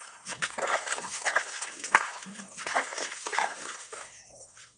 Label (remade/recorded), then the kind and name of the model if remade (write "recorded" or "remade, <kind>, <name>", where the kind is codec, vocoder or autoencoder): remade, codec, SNAC